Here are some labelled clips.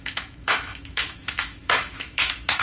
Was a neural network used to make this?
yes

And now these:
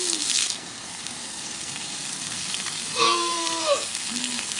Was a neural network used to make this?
yes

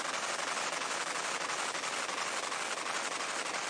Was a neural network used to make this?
no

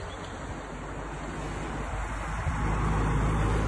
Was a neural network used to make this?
no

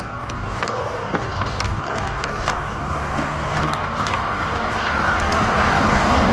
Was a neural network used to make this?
yes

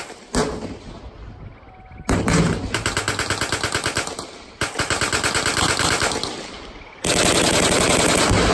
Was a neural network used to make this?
no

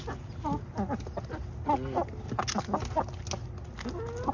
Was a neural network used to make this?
no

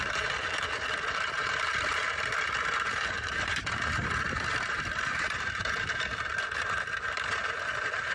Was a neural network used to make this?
yes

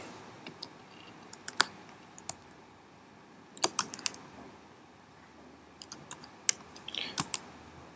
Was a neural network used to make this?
no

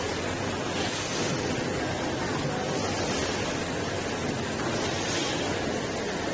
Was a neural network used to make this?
no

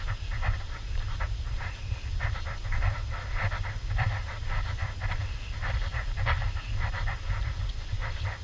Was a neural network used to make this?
no